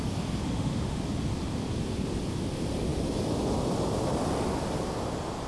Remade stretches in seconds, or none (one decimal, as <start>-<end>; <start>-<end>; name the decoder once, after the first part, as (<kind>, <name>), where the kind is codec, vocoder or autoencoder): 0.4-1.0 (autoencoder, DAC-VAE)